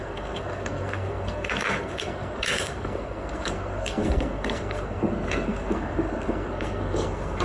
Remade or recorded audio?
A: remade